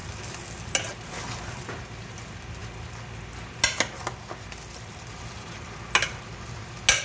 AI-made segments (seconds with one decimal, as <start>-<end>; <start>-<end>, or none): none